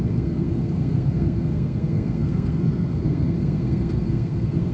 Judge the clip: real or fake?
fake